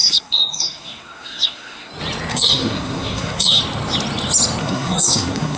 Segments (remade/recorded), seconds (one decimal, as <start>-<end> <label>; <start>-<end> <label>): 0.0-1.9 remade; 1.9-2.3 recorded; 2.3-3.6 remade; 3.6-4.6 recorded; 4.6-5.6 remade